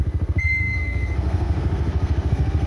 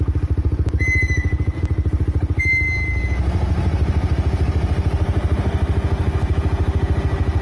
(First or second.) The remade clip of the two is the first